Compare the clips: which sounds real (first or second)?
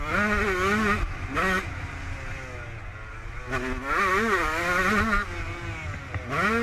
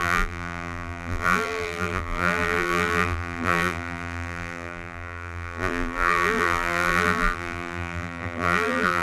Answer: first